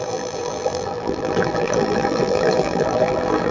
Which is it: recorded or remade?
remade